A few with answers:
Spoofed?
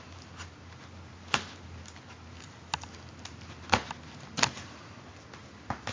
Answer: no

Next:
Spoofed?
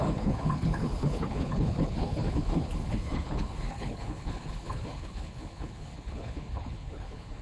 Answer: yes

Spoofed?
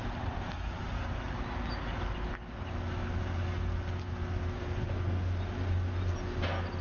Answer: no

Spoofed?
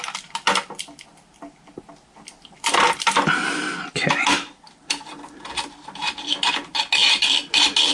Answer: no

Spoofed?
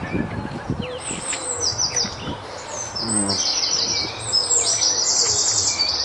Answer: no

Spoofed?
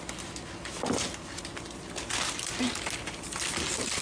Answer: no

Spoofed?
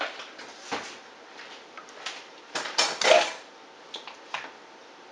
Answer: no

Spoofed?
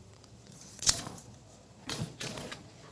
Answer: yes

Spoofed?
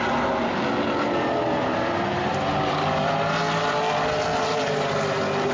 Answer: no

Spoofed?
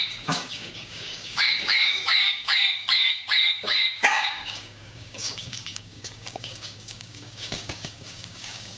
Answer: yes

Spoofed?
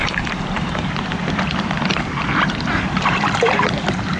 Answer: yes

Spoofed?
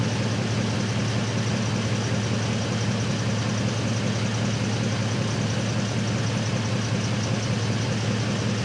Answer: no